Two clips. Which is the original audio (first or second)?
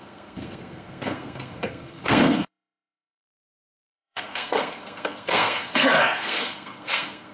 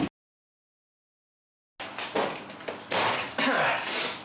second